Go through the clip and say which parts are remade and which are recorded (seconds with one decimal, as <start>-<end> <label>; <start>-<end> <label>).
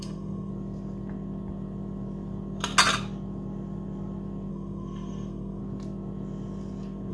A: 0.0-0.5 remade; 0.5-4.5 recorded; 4.5-5.6 remade; 5.6-7.1 recorded